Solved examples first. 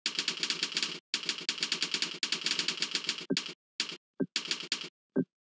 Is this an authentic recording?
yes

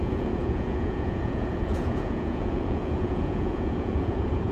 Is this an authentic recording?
no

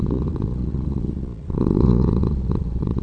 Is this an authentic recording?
no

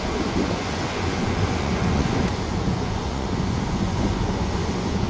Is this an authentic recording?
no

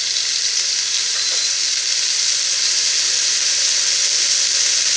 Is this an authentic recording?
yes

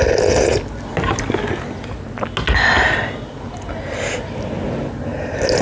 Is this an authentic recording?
yes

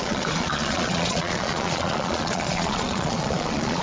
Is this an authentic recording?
no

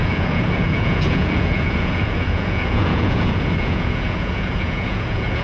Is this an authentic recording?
no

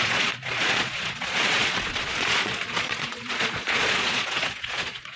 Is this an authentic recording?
no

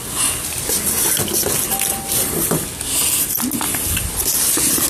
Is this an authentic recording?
yes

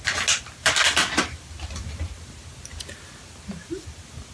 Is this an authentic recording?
yes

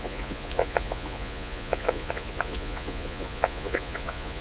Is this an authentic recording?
no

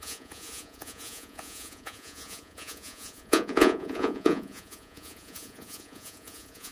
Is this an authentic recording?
no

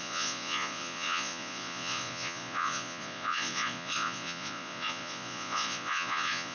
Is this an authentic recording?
no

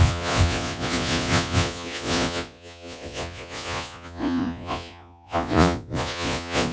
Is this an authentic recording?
no